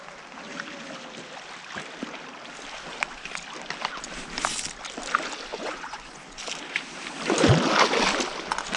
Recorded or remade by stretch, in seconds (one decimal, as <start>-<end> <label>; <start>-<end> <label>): 0.0-5.5 recorded; 5.5-6.4 remade; 6.4-8.8 recorded